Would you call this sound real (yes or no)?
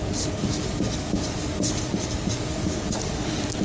no